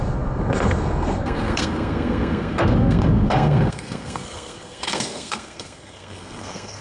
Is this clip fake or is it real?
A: fake